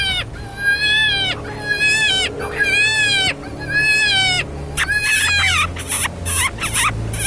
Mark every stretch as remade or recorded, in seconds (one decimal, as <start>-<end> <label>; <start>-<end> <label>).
0.0-7.3 recorded